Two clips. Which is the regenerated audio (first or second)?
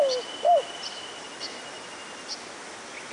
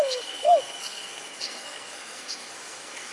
second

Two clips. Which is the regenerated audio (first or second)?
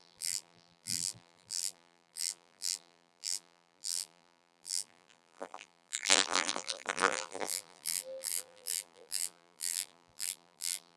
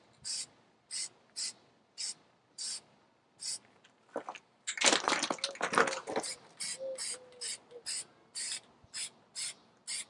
first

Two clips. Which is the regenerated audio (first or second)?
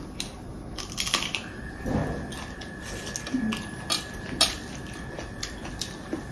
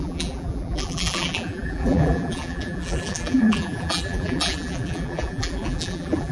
second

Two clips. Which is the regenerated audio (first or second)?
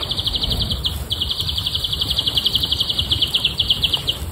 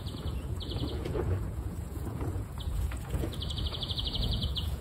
second